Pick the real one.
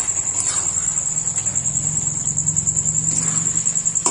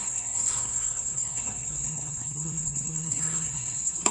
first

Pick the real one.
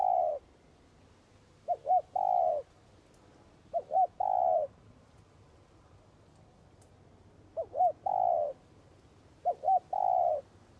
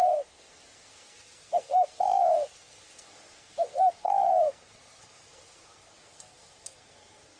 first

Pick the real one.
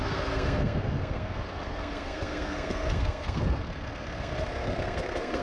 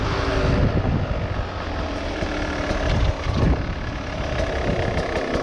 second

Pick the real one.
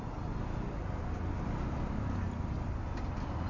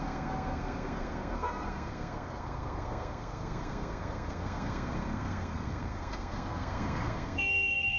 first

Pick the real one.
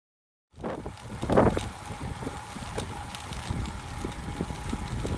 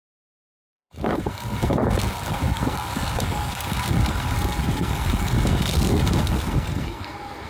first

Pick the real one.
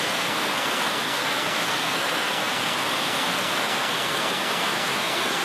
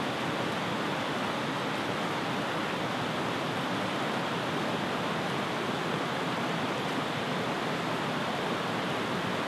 second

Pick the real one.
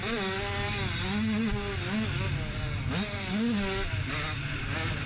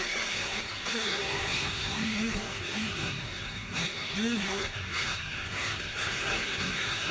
first